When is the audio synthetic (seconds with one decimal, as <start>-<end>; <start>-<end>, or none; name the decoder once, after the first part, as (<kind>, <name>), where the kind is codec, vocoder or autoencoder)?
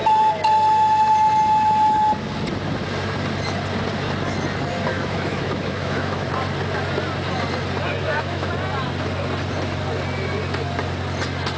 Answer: 4.9-6.3 (autoencoder, DAC-VAE); 8.0-8.5